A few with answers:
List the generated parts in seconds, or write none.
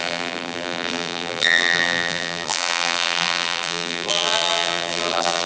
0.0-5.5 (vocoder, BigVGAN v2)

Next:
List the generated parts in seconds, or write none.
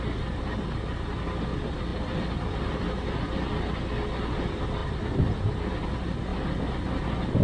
1.9-3.5 (vocoder, BigVGAN v2); 4.8-5.5; 6.3-7.4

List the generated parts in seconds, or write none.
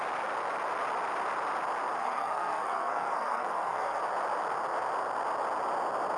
2.0-4.0 (codec, SNAC)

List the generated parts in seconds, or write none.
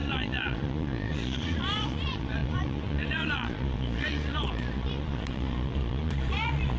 0.0-6.8 (vocoder, Vocos)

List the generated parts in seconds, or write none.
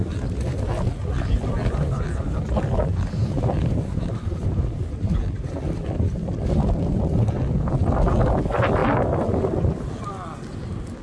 8.8-9.9 (vocoder, BigVGAN v2)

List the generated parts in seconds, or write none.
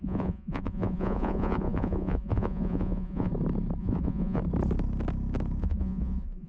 0.0-3.3 (vocoder, Vocos); 3.8-4.4; 5.6-6.5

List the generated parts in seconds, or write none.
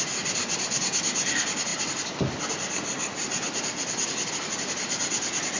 none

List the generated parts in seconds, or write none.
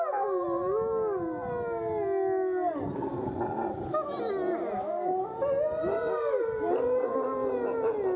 none